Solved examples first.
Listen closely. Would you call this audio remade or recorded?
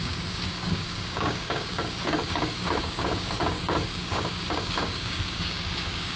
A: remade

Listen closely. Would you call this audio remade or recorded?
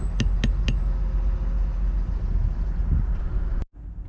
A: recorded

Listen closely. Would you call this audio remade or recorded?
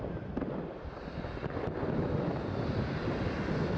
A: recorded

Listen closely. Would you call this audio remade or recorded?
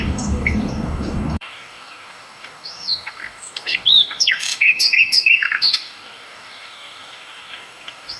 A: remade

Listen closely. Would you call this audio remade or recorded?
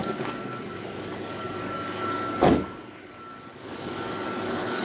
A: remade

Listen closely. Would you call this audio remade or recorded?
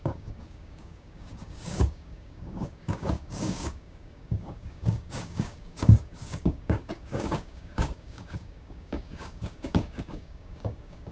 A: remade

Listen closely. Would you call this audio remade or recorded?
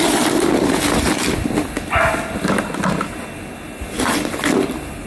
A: recorded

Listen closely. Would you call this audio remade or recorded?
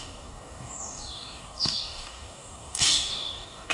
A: remade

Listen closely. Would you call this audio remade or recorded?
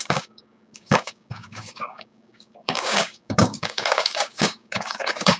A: remade